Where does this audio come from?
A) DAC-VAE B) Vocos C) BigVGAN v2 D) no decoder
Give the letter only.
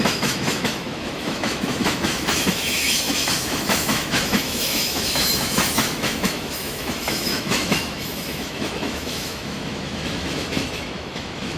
A